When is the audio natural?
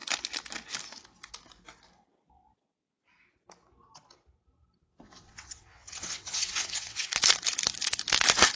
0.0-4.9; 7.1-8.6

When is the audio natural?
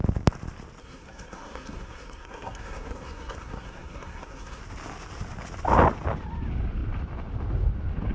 0.0-0.8; 4.6-8.1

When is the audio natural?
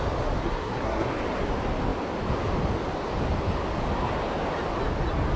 0.0-0.4; 1.1-5.4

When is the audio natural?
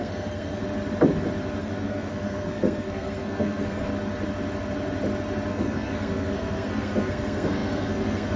0.6-1.6; 3.9-5.5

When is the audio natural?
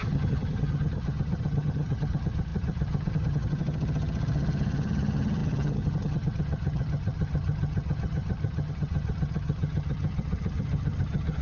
none